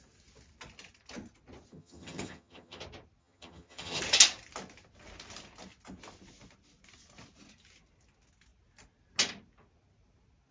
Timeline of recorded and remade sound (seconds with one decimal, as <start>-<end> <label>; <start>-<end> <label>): 0.0-1.7 recorded; 1.7-2.8 remade; 2.8-3.2 recorded; 3.2-4.0 remade; 4.0-10.5 recorded